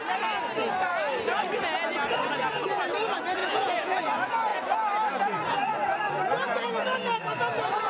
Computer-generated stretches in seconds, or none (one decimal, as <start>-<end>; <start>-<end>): 3.4-4.0